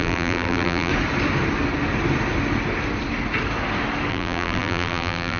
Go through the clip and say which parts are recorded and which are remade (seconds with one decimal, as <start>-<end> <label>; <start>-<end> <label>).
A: 0.0-0.9 remade; 0.9-4.1 recorded; 4.1-5.4 remade